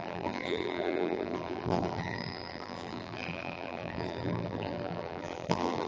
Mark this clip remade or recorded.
remade